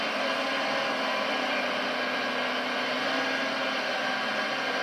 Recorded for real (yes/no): yes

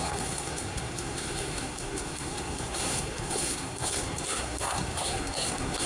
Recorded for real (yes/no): no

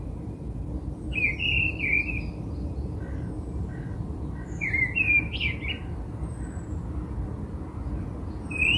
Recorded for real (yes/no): yes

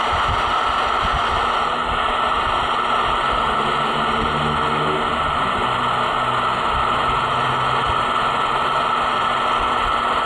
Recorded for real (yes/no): yes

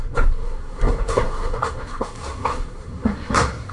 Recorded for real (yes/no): no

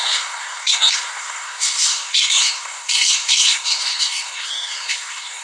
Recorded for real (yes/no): no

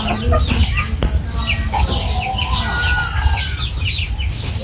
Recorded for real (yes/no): yes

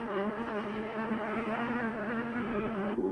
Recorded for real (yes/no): no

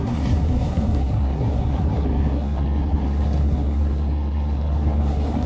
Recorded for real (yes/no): no